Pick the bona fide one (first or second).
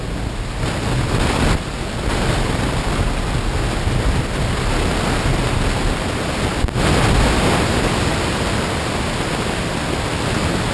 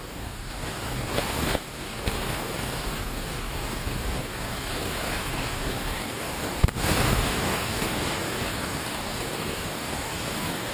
first